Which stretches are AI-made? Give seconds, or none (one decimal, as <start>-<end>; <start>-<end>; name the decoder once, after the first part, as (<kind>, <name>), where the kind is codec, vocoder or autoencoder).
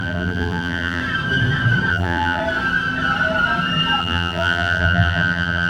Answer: 0.0-1.0 (vocoder, BigVGAN v2); 1.9-2.4; 4.0-5.7